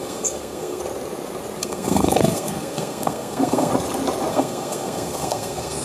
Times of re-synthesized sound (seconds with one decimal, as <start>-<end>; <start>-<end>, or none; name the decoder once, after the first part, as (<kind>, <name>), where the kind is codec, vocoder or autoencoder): 0.0-0.8 (codec, SNAC); 1.6-3.7; 4.3-5.8